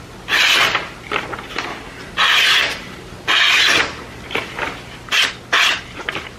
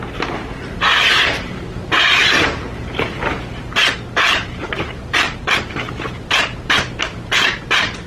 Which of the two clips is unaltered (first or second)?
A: first